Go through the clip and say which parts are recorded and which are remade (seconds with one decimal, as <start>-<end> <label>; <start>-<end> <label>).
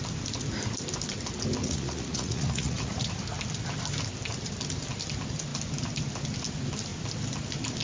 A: 0.0-1.6 recorded; 1.6-3.1 remade; 3.1-7.8 recorded